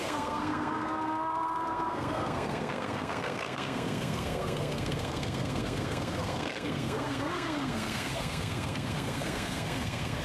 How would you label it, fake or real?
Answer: fake